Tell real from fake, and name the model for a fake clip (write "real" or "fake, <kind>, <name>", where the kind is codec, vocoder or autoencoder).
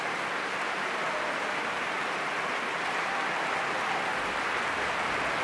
real